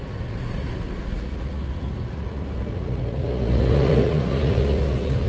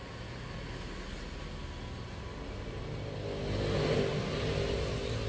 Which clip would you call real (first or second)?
second